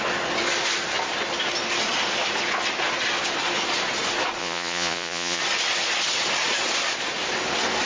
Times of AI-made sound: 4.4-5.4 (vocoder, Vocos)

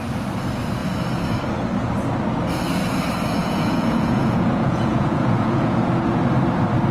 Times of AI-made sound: 3.4-5.9 (vocoder, Vocos)

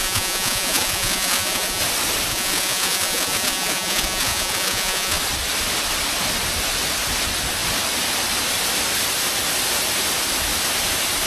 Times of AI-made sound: 0.0-1.8 (vocoder, Vocos); 2.3-5.2

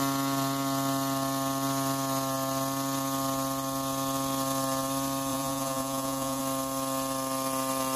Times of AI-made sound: 5.3-6.4 (vocoder, Vocos)

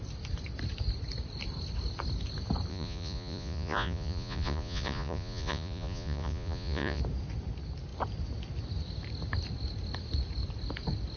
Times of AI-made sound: 2.7-7.0 (vocoder, Vocos)

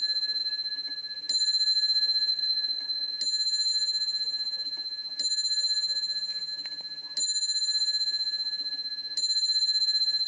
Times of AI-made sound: 2.3-3.1 (vocoder, Vocos)

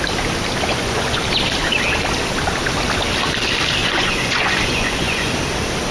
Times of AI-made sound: 0.7-1.2 (vocoder, Vocos); 3.8-5.3

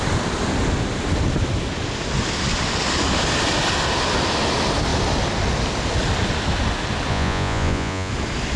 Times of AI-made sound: 7.1-8.1 (vocoder, Vocos)